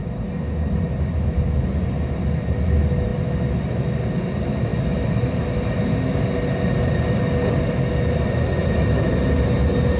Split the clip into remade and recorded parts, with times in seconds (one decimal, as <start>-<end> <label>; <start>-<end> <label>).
0.0-10.0 recorded